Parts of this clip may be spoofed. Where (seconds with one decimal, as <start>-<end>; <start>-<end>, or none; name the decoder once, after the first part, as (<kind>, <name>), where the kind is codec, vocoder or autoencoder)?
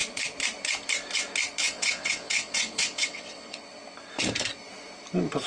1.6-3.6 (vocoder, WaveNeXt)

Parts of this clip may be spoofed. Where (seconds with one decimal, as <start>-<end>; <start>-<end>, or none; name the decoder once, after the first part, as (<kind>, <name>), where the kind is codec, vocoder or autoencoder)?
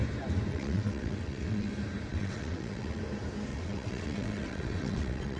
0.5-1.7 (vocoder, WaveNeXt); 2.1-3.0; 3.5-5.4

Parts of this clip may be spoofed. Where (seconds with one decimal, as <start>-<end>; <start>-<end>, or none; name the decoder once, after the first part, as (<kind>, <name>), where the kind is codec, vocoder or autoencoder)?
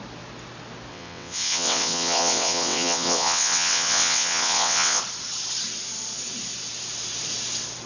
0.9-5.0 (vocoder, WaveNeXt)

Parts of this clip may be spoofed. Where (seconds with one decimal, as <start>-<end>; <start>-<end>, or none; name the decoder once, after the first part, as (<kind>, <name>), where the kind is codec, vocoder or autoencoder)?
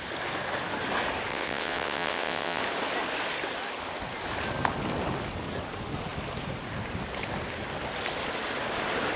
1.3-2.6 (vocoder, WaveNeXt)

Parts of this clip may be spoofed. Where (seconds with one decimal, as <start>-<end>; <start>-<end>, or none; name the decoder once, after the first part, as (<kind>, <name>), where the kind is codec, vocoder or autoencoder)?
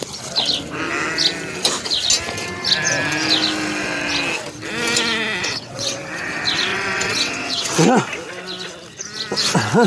5.4-6.0 (vocoder, WaveNeXt); 6.7-8.0